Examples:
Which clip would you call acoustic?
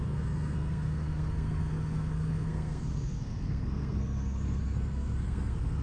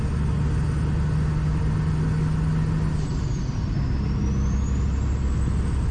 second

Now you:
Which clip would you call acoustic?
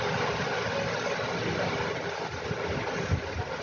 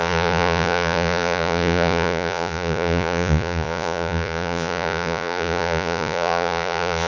first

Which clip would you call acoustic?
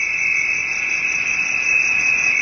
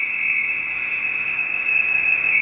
first